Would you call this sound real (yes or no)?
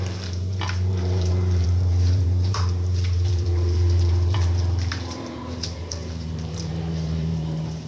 no